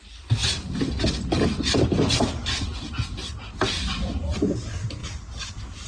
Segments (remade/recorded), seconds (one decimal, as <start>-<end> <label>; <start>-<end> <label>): 0.0-5.9 recorded